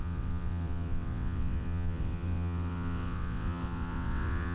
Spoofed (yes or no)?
yes